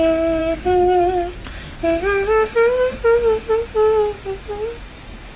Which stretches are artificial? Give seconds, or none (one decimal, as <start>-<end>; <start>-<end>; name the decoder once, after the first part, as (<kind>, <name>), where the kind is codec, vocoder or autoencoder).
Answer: 0.4-1.8 (codec, DAC)